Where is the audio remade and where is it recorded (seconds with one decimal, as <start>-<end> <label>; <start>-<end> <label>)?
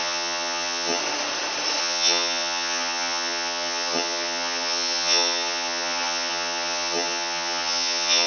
0.0-1.0 remade; 1.0-1.8 recorded; 1.8-8.3 remade